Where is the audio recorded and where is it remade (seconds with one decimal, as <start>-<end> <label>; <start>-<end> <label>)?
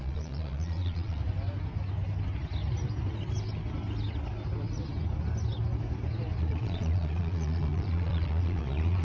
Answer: 0.0-1.2 remade; 1.2-6.4 recorded; 6.4-9.0 remade